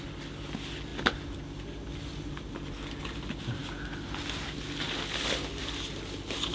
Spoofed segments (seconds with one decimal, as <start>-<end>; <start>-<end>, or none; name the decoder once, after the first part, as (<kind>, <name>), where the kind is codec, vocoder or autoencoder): none